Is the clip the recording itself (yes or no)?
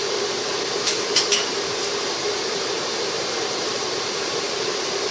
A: no